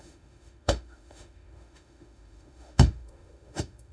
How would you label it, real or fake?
fake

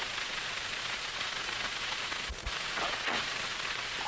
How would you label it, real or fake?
fake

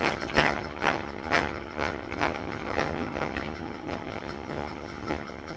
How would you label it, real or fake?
fake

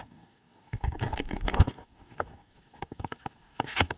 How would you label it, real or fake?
fake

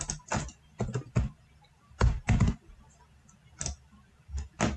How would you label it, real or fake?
real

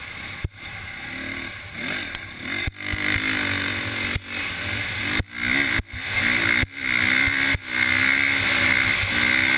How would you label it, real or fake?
real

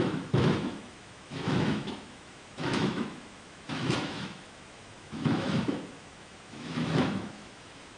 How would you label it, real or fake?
fake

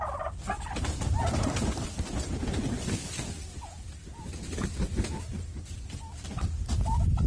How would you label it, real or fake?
real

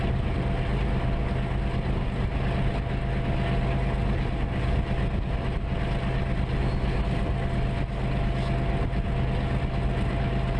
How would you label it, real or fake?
real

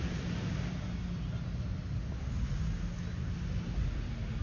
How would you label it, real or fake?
real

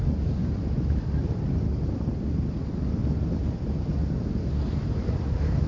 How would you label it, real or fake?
real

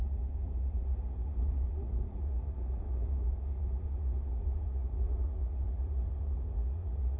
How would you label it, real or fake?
fake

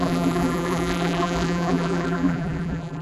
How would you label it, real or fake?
fake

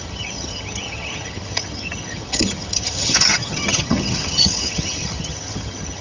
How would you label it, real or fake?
fake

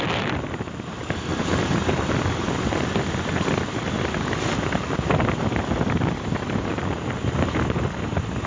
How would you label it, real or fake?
real